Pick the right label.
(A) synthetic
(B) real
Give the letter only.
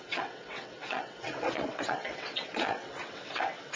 A